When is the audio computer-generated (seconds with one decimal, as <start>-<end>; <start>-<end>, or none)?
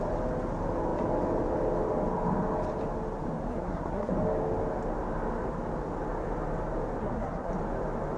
3.5-4.1; 7.0-7.5